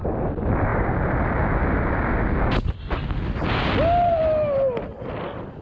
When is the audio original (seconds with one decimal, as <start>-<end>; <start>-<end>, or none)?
0.0-5.6